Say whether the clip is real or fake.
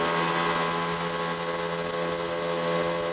real